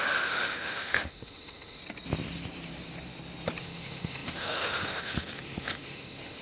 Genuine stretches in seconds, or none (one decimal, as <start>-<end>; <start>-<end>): 1.8-3.6